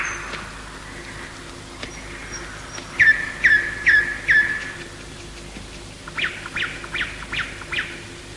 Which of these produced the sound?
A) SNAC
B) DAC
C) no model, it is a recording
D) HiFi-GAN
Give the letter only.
C